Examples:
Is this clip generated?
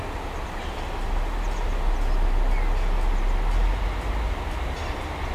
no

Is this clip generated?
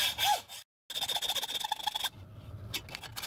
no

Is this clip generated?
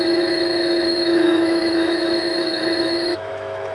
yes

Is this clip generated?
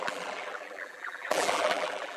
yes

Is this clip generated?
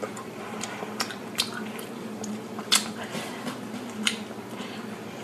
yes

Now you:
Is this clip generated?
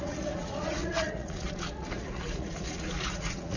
yes